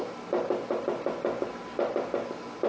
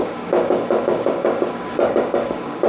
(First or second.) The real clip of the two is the first